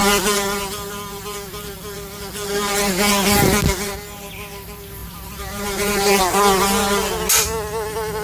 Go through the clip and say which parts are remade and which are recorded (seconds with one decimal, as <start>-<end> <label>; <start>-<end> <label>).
0.0-5.0 recorded; 5.0-6.2 remade; 6.2-8.2 recorded